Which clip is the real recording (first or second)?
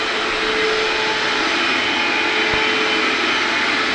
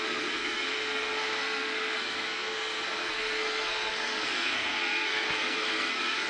first